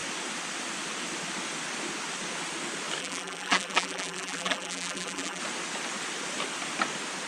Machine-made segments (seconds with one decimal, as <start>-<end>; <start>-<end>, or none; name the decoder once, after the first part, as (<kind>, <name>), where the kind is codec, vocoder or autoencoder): 3.0-5.4 (vocoder, BigVGAN v2)